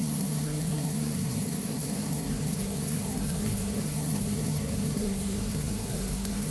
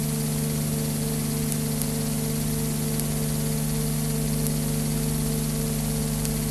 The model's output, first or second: first